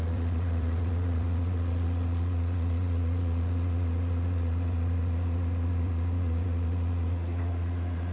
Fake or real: fake